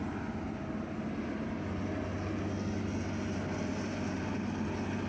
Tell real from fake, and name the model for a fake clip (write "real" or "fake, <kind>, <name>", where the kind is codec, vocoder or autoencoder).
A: real